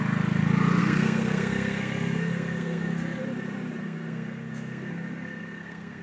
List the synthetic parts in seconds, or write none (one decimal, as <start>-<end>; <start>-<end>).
0.8-3.2; 3.8-6.0